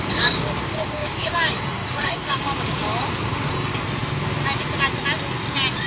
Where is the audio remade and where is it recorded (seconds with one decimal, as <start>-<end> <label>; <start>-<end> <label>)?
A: 0.0-3.7 remade; 3.7-5.9 recorded